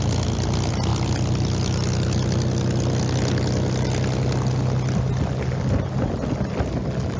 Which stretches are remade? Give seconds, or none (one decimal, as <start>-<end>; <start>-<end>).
none